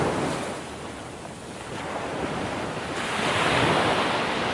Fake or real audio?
real